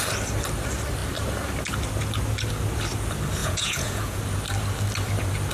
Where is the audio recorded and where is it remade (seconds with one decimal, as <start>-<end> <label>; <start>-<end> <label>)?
0.0-3.4 recorded; 3.4-4.2 remade; 4.2-5.5 recorded